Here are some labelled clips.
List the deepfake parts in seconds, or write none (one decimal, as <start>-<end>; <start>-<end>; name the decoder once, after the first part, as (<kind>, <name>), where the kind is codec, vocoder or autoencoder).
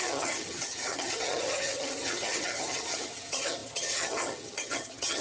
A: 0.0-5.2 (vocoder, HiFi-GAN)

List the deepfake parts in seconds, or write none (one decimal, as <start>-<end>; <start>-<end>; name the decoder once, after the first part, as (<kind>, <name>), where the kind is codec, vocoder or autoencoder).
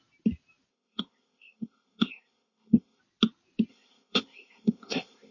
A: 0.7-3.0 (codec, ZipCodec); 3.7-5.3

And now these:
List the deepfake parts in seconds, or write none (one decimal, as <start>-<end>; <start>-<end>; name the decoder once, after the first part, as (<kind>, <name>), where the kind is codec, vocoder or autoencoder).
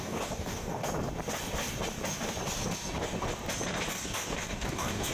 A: 0.0-0.8 (codec, DAC); 3.9-5.1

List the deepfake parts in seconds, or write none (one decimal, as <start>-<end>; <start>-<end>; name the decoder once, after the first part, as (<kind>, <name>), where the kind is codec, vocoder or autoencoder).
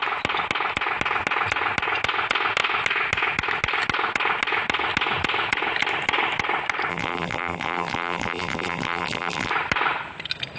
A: 6.9-9.5 (vocoder, BigVGAN v2)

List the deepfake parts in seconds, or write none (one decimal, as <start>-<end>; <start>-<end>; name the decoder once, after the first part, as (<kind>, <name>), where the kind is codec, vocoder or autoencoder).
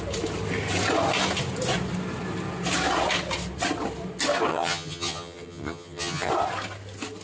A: 4.5-6.3 (vocoder, HiFi-GAN)